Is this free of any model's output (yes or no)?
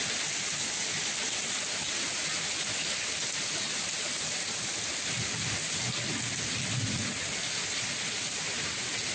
yes